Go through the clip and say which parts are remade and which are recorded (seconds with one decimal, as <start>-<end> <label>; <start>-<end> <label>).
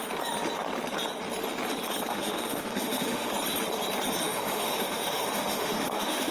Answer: 0.0-2.1 recorded; 2.1-3.3 remade; 3.3-4.2 recorded; 4.2-6.3 remade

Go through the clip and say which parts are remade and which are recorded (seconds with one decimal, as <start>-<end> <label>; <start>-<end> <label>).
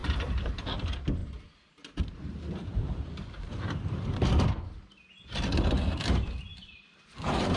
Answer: 0.0-0.5 remade; 0.5-1.2 recorded; 1.2-5.0 remade; 5.0-6.5 recorded; 6.5-7.6 remade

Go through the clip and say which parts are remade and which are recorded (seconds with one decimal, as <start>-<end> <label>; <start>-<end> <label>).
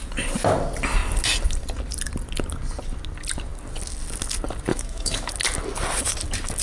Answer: 0.0-4.7 recorded; 4.7-5.3 remade; 5.3-6.6 recorded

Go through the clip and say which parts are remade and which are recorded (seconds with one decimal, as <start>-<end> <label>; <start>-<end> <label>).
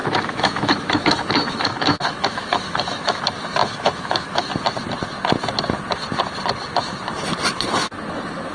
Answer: 0.0-3.2 remade; 3.2-3.6 recorded; 3.6-4.5 remade; 4.5-8.5 recorded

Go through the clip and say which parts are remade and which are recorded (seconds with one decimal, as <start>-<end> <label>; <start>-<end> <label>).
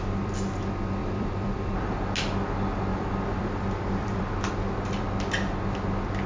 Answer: 0.0-1.0 recorded; 1.0-1.9 remade; 1.9-2.9 recorded; 2.9-4.5 remade; 4.5-6.3 recorded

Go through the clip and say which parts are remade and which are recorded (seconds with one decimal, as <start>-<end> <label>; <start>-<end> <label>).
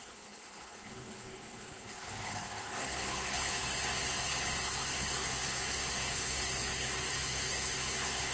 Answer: 0.0-8.3 remade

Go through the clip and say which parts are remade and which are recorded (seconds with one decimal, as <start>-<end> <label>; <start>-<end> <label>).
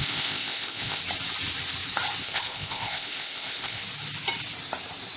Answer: 0.0-1.0 remade; 1.0-2.2 recorded; 2.2-3.8 remade; 3.8-5.2 recorded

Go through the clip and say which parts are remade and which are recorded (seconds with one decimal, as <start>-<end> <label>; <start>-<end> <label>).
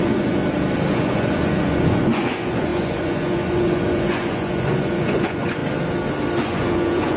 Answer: 0.0-0.4 remade; 0.4-0.9 recorded; 0.9-5.6 remade; 5.6-6.4 recorded; 6.4-7.2 remade